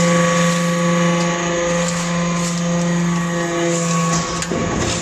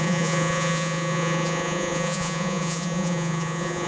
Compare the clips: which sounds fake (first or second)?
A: second